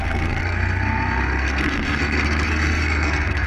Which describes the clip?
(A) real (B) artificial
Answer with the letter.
B